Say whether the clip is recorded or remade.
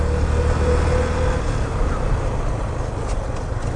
recorded